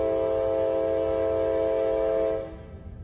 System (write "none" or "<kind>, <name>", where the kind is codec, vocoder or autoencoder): none